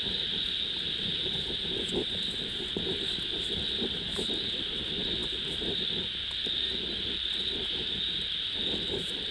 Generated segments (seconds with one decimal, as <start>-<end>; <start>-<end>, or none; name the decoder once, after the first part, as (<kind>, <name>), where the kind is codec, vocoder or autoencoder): none